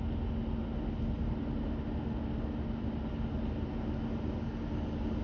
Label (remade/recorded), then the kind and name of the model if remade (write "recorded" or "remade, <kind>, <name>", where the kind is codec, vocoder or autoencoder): recorded